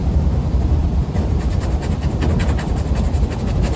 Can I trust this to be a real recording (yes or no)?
no